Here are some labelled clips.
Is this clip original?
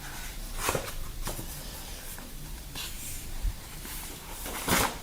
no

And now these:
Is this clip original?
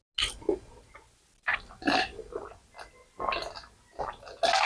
yes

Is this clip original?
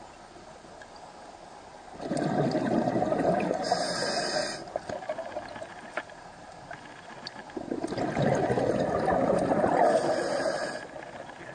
yes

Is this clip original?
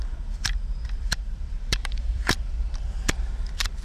no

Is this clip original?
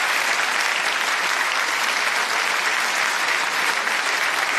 yes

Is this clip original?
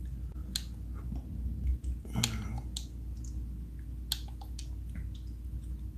yes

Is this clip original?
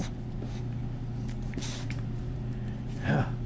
no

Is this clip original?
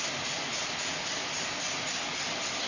yes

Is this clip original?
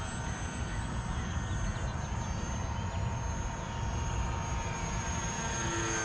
yes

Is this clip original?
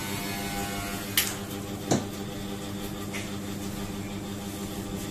yes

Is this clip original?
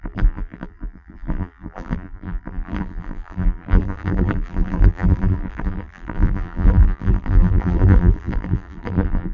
no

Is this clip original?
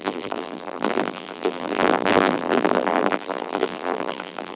no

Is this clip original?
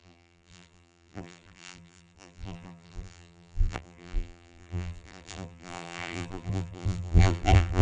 no